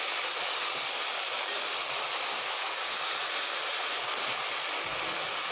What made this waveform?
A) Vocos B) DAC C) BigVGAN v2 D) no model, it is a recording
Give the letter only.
D